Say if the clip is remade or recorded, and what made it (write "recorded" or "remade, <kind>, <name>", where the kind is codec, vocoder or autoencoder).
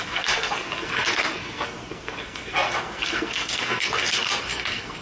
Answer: remade, codec, SNAC